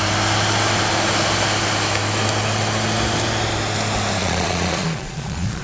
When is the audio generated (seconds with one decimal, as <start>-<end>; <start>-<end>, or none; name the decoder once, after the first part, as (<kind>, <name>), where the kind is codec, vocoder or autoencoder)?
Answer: 4.2-5.6 (vocoder, Vocos)